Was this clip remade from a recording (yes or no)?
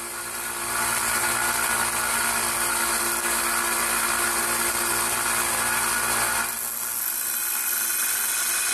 no